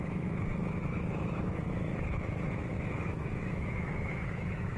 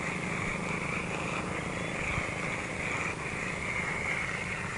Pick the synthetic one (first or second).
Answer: first